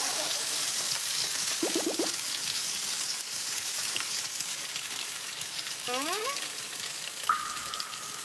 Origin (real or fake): fake